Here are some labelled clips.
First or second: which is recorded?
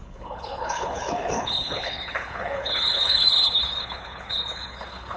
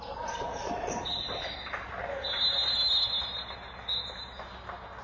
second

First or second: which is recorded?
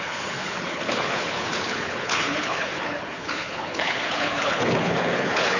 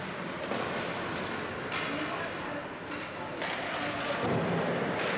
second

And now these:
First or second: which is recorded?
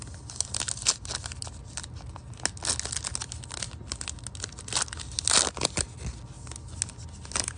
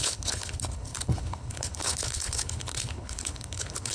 first